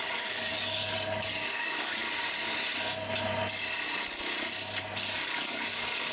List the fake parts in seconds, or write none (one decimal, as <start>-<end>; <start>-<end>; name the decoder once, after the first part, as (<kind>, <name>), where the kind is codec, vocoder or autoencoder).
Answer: 0.0-2.0 (codec, DAC); 4.8-6.1